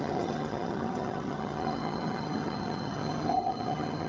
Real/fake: fake